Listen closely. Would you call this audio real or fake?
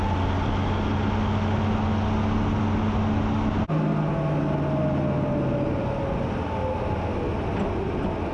real